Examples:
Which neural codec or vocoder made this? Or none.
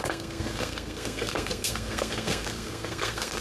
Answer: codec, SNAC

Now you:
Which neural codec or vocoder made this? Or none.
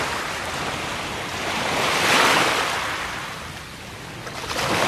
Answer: none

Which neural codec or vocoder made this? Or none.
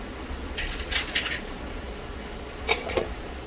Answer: vocoder, Vocos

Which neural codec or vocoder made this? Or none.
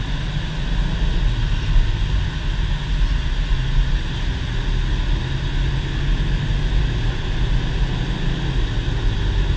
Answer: none